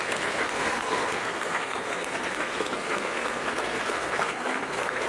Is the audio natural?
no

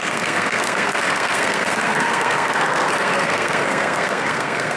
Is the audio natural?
no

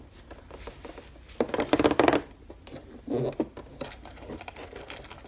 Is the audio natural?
yes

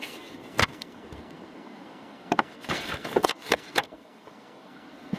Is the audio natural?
no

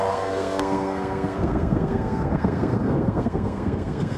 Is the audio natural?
no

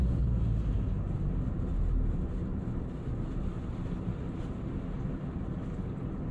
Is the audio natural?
yes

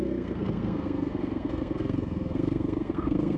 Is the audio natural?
no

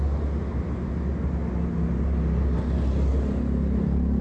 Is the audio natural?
yes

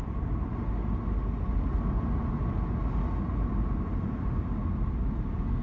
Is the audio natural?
yes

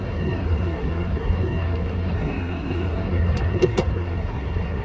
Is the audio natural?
no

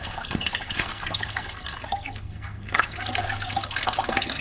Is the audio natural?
no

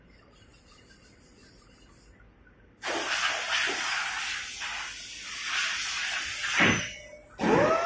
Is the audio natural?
yes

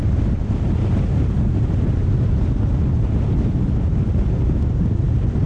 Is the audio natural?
yes